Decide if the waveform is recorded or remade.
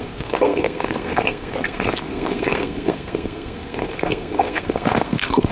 remade